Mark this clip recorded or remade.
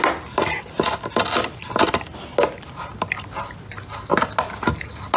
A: recorded